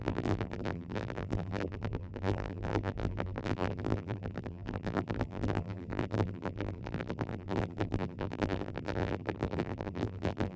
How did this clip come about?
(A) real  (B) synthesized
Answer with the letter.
B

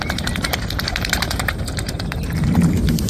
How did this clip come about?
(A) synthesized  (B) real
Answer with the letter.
A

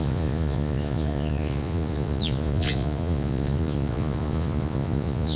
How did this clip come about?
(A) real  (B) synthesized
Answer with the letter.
B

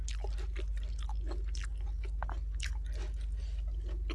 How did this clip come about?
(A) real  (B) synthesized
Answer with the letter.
A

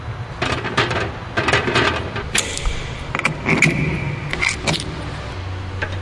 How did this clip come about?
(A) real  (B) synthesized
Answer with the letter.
A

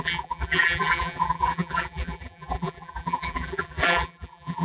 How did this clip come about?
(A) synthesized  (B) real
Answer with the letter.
A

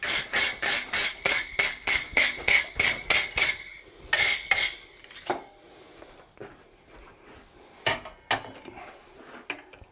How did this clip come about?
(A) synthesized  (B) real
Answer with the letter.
B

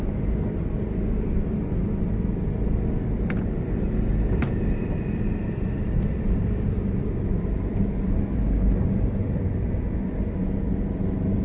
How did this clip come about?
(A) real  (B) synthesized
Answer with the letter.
B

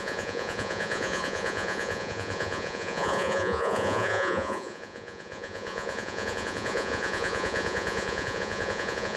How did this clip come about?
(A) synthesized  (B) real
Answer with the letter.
A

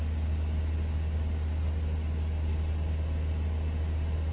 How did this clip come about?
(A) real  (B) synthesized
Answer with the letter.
A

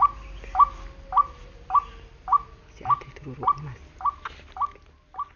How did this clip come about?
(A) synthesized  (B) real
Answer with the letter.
B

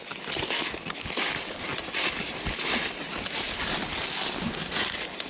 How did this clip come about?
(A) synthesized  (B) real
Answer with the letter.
B